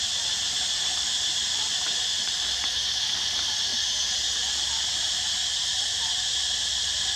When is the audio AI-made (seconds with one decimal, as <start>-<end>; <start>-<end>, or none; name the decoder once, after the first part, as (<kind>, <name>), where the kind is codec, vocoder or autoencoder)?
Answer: 0.0-3.7 (vocoder, BigVGAN v2); 6.4-7.2